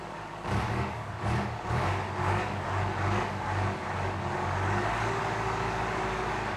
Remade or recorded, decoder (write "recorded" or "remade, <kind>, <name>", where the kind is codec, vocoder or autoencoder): remade, codec, DAC